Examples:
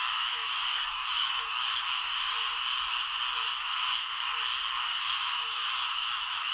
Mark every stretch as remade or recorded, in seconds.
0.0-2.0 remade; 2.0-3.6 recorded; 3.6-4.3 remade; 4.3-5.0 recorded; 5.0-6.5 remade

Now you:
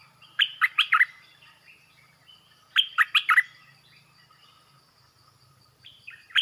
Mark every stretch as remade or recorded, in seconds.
0.0-2.2 remade; 2.2-5.5 recorded; 5.5-6.4 remade

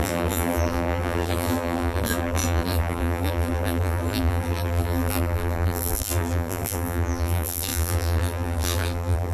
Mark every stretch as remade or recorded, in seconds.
0.0-9.3 remade

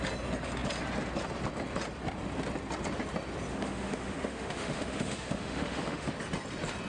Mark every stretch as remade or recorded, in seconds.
0.0-3.5 recorded; 3.5-6.1 remade; 6.1-6.9 recorded

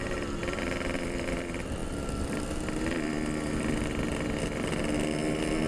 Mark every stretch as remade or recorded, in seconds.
0.0-5.7 recorded

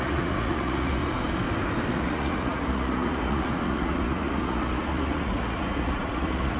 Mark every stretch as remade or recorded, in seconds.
0.0-1.0 remade; 1.0-1.9 recorded; 1.9-6.6 remade

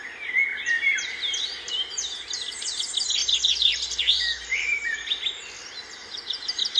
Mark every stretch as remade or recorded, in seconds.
0.0-0.5 recorded; 0.5-1.7 remade; 1.7-3.2 recorded; 3.2-5.4 remade; 5.4-6.0 recorded; 6.0-6.8 remade

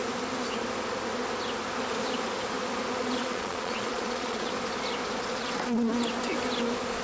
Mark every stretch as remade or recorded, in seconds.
0.0-3.2 recorded; 3.2-4.5 remade; 4.5-7.0 recorded